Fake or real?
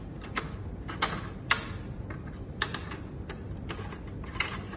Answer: real